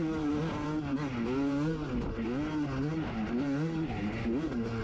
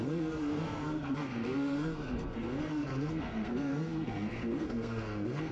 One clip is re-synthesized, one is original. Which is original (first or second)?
first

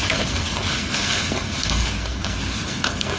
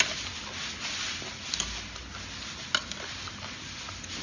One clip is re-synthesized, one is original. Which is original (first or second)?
second